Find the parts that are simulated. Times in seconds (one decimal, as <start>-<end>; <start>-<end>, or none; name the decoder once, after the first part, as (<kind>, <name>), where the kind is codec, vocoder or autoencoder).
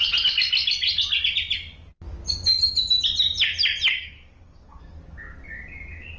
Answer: 3.9-4.8 (codec, DAC)